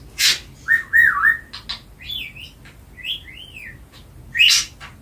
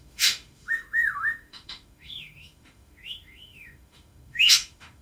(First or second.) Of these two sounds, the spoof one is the second